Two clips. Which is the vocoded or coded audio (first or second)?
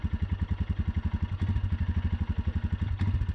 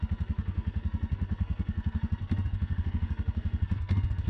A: second